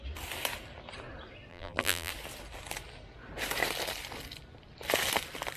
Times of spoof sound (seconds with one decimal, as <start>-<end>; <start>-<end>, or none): 1.5-2.1